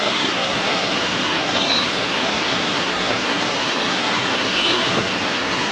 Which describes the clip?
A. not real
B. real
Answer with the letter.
A